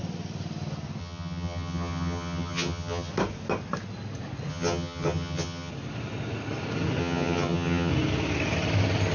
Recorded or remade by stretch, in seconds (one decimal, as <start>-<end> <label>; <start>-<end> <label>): 0.0-1.0 recorded; 1.0-3.1 remade; 3.1-4.5 recorded; 4.5-5.7 remade; 5.7-7.0 recorded; 7.0-7.9 remade; 7.9-9.1 recorded